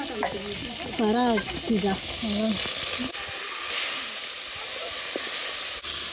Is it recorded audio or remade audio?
recorded